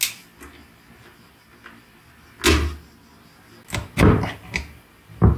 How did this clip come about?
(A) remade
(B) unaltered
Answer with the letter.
B